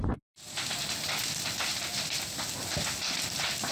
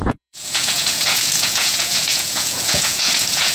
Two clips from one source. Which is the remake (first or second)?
second